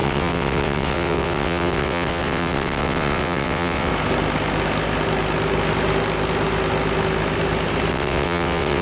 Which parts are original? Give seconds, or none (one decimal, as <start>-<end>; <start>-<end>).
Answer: 3.9-7.9